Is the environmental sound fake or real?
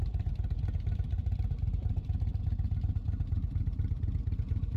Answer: real